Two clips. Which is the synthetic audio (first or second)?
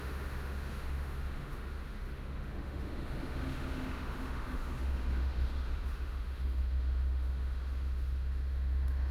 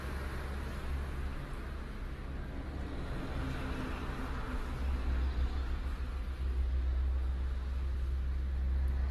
first